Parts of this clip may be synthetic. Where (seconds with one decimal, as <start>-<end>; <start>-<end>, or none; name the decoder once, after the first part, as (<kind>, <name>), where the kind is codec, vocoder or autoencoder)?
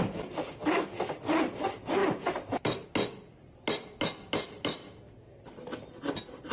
none